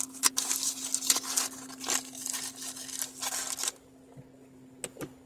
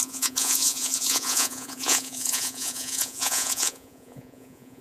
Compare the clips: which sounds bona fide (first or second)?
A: first